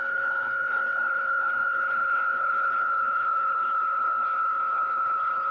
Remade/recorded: remade